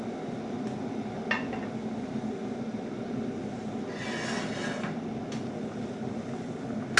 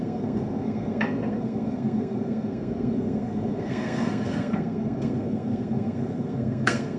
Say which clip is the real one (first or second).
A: first